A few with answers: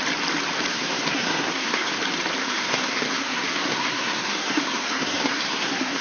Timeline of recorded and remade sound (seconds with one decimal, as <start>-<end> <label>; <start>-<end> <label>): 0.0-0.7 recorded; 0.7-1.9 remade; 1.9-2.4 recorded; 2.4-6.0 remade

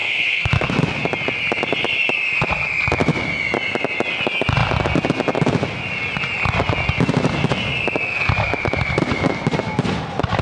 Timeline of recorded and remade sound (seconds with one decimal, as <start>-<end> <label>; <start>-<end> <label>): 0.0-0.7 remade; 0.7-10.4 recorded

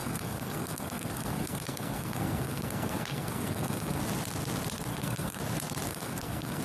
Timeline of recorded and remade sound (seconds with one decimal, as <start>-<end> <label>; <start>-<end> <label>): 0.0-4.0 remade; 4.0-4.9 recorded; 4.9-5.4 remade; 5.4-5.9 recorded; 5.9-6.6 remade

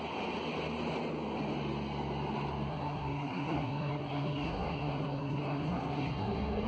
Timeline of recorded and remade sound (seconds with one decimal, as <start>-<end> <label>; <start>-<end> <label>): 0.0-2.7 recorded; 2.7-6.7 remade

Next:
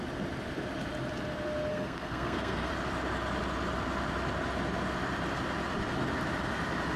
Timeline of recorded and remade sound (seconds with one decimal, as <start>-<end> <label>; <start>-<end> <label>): 0.0-1.7 recorded; 1.7-2.7 remade; 2.7-7.0 recorded

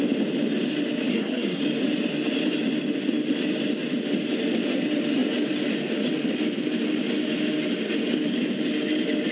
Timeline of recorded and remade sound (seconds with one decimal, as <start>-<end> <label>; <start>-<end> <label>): 0.0-1.1 recorded; 1.1-1.6 remade; 1.6-9.3 recorded